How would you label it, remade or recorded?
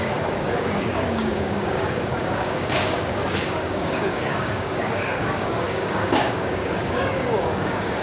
remade